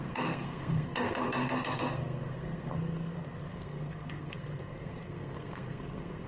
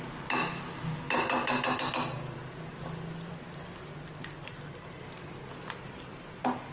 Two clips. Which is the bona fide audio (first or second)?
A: second